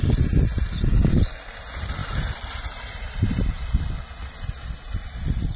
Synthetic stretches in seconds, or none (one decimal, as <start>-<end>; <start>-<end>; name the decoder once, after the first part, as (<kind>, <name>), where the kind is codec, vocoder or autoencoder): 2.0-3.8 (vocoder, BigVGAN v2)